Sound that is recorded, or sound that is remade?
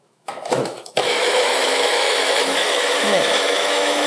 remade